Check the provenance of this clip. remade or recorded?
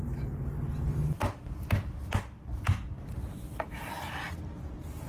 recorded